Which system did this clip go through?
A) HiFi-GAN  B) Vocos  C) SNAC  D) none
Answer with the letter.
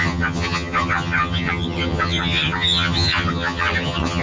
A